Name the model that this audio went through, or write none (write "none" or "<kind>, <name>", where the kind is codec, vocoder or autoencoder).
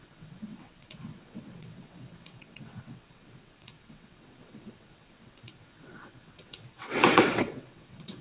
vocoder, WaveNeXt